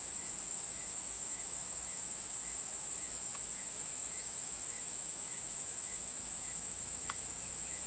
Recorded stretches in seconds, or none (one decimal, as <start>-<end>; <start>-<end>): none